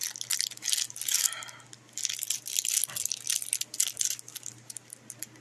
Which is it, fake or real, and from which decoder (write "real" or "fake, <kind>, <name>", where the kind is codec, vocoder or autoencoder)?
real